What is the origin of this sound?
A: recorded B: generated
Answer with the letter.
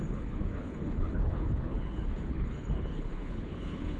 B